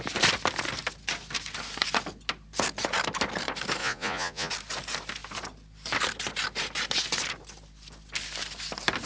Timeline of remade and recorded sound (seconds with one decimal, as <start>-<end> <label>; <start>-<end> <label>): 0.0-3.8 recorded; 3.8-4.5 remade; 4.5-9.1 recorded